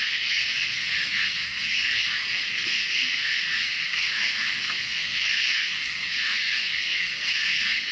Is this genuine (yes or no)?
no